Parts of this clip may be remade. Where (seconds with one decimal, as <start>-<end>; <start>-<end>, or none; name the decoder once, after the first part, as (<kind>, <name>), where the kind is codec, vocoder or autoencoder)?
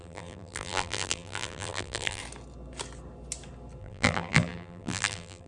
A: 0.0-2.2 (vocoder, BigVGAN v2); 3.8-5.5